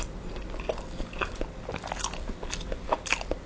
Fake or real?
real